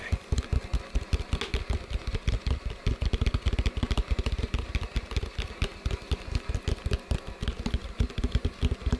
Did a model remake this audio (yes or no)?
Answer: no